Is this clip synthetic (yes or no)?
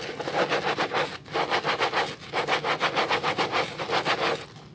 no